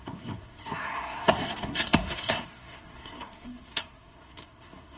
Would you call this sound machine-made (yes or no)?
yes